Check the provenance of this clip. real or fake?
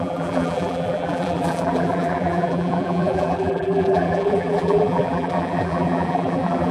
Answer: fake